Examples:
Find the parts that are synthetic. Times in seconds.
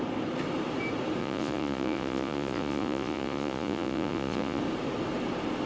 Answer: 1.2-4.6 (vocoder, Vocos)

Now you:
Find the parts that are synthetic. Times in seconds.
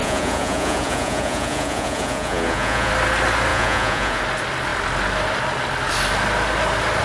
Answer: 0.0-2.9 (vocoder, Vocos); 3.5-4.2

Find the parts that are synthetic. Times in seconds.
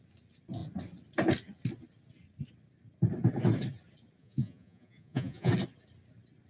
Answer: 4.2-5.5 (vocoder, Vocos)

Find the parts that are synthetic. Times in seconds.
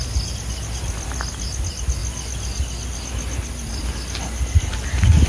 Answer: none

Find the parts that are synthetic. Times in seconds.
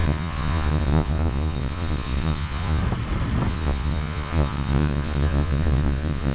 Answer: 0.0-2.8 (vocoder, Vocos); 3.5-6.3